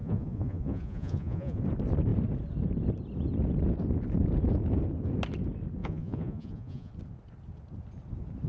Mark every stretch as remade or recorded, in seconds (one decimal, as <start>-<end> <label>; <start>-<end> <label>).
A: 0.0-1.6 remade; 1.6-5.8 recorded; 5.8-6.9 remade; 6.9-8.5 recorded